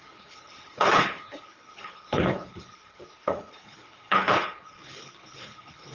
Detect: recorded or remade remade